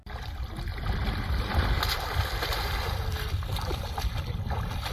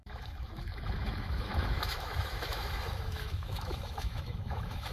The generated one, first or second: second